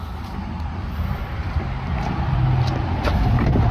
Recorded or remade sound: recorded